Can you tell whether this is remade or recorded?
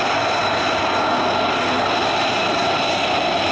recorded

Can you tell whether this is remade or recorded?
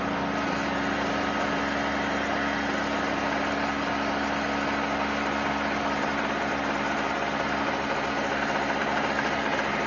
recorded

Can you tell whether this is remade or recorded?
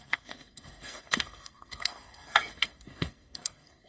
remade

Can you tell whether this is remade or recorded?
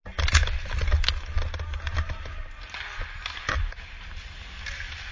recorded